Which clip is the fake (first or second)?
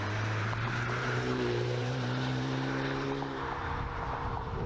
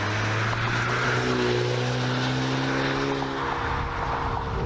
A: first